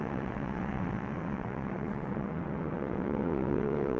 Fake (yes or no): yes